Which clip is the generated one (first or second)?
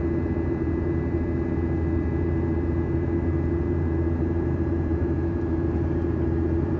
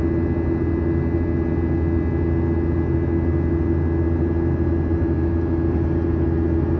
first